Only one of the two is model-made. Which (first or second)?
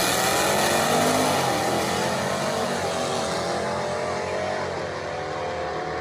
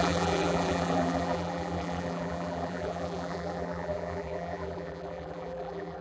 second